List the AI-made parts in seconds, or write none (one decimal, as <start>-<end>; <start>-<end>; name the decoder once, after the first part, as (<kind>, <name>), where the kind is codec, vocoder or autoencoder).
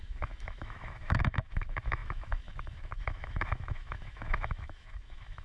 0.0-5.4 (autoencoder, DAC-VAE)